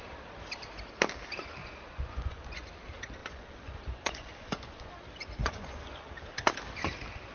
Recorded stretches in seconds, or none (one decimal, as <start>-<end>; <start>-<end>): 0.0-1.6; 2.7-3.2; 4.9-5.4; 6.1-7.3